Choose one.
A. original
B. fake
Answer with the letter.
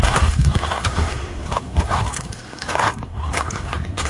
B